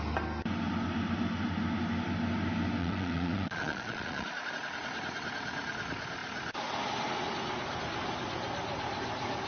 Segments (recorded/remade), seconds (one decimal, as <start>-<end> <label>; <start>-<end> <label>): 0.0-2.8 recorded; 2.8-4.5 remade; 4.5-9.5 recorded